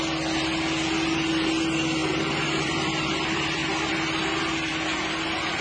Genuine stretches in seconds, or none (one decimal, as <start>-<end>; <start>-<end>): 0.0-2.0; 3.9-5.6